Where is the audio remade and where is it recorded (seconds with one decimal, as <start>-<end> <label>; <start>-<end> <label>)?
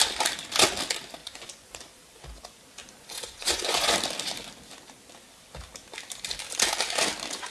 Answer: 0.0-1.2 recorded; 1.2-1.8 remade; 1.8-2.8 recorded; 2.8-3.9 remade; 3.9-7.5 recorded